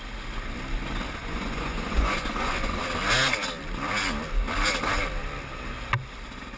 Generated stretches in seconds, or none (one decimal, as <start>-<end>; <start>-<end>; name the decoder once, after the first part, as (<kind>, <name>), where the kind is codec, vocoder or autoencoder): 1.2-2.8 (vocoder, Vocos)